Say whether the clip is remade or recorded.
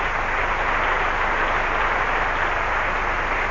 recorded